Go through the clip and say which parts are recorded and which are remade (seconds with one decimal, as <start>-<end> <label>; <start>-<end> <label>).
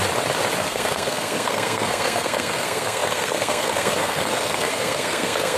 0.0-0.6 recorded; 0.6-5.6 remade